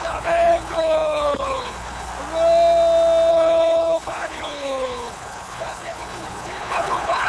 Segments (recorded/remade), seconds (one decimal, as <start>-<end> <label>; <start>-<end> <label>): 0.0-2.1 remade; 2.1-3.3 recorded; 3.3-7.3 remade